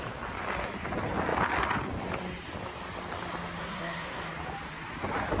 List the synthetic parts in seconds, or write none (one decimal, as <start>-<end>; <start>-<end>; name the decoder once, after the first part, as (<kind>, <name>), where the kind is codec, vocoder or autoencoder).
3.6-4.2 (codec, SNAC)